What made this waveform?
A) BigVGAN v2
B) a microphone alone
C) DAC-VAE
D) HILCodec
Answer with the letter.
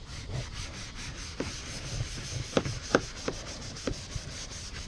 B